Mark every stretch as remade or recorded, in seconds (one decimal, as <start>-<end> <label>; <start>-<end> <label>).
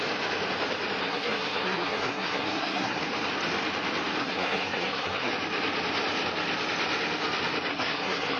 0.0-1.0 recorded; 1.0-3.0 remade; 3.0-4.2 recorded; 4.2-5.3 remade; 5.3-7.7 recorded; 7.7-8.4 remade